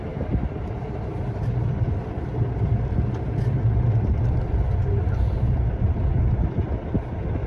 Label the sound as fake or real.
real